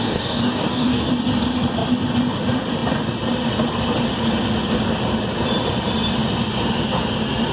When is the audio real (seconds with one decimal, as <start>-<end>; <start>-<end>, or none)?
1.1-7.5